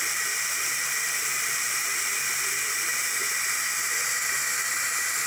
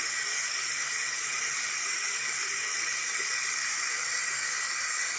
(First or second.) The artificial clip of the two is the second